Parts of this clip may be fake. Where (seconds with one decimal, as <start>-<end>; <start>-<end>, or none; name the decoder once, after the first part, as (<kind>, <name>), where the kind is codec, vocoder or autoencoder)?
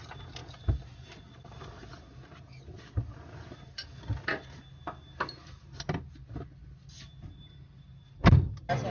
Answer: none